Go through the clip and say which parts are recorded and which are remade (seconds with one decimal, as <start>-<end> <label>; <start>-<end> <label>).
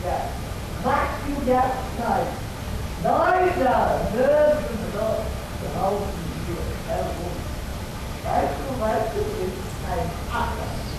0.0-11.0 recorded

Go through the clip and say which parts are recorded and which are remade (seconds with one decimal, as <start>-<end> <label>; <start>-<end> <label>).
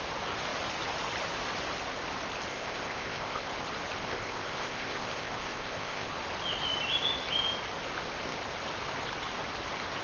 0.0-2.5 recorded; 2.5-3.5 remade; 3.5-4.0 recorded; 4.0-6.1 remade; 6.1-10.0 recorded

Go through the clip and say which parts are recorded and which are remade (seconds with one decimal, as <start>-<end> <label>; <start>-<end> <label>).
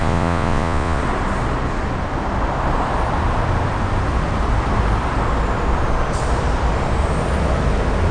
0.0-1.0 remade; 1.0-8.1 recorded